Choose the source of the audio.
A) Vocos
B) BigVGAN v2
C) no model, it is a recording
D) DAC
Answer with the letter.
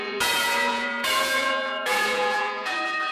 A